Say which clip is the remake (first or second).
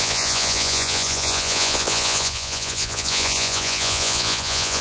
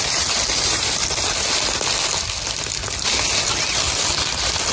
first